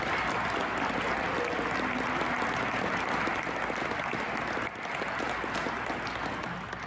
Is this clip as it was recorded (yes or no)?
yes